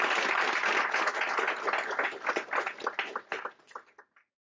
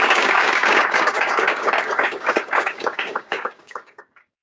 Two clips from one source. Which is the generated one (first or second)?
second